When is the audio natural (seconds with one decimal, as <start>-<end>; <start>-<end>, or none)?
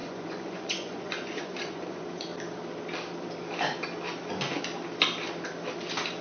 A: 2.3-6.2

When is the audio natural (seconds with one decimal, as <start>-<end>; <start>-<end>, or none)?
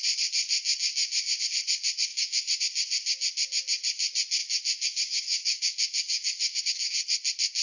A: 0.0-2.1; 2.6-4.4; 6.6-7.6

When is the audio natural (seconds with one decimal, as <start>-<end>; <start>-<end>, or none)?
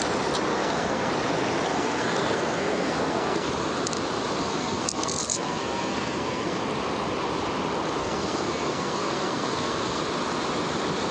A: 0.0-0.5; 1.1-1.7; 3.5-4.4; 6.6-8.0; 10.0-11.1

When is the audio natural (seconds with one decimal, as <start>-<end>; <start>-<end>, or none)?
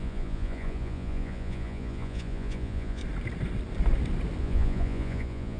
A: 3.0-4.4